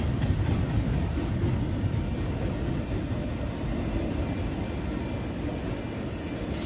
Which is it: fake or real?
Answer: real